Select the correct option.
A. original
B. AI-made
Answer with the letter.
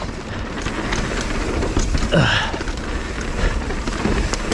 A